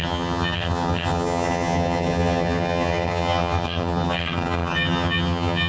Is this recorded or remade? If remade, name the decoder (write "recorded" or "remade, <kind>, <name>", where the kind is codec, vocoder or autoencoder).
remade, vocoder, HiFi-GAN